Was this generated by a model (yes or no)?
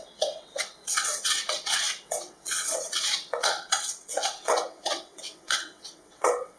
yes